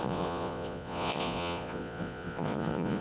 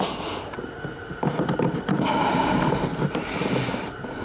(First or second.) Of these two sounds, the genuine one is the second